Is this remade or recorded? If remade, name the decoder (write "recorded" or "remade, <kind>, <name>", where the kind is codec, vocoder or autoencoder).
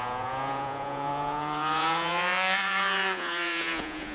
remade, vocoder, Vocos